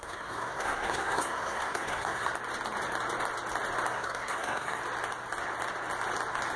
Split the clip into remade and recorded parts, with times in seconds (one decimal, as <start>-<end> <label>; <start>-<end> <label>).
0.0-2.3 remade; 2.3-3.9 recorded; 3.9-4.8 remade; 4.8-6.6 recorded